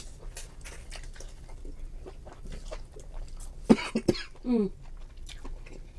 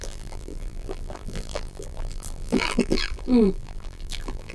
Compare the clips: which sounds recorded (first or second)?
first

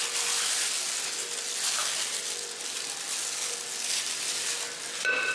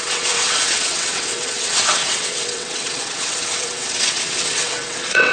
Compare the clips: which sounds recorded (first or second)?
first